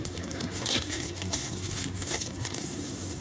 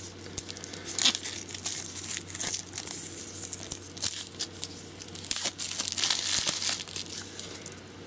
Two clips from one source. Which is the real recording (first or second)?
second